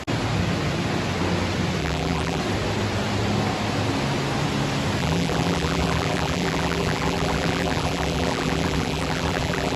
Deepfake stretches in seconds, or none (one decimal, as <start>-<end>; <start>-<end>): 1.8-2.4; 5.0-9.8